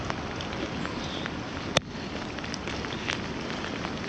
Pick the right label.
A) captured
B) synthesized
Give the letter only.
A